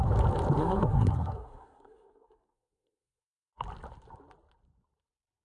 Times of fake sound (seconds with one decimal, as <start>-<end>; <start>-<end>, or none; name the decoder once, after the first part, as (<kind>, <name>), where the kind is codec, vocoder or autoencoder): 0.6-3.5 (codec, SNAC)